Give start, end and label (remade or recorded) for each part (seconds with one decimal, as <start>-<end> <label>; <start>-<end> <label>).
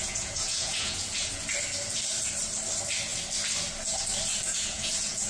0.0-1.4 remade; 1.4-4.5 recorded; 4.5-5.3 remade